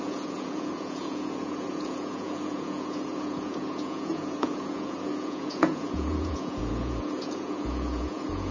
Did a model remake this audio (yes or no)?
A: yes